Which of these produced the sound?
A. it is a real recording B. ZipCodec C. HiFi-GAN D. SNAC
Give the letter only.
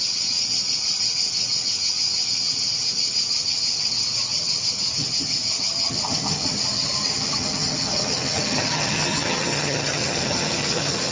C